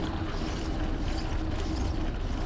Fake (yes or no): no